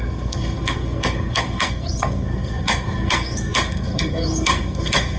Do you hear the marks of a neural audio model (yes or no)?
yes